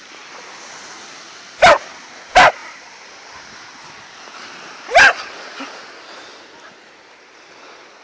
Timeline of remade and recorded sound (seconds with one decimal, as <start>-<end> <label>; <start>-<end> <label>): 0.0-8.0 recorded